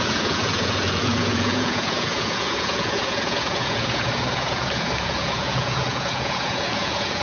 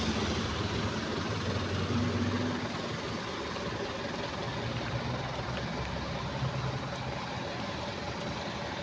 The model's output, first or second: first